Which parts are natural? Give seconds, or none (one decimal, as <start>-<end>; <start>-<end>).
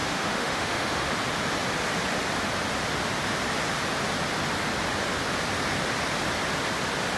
1.1-7.2